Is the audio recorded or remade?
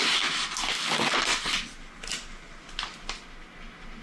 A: recorded